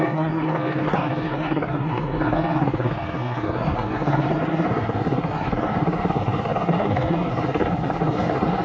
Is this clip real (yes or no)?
no